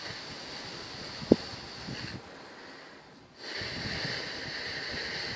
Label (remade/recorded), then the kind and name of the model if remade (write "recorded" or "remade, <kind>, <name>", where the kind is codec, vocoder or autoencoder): recorded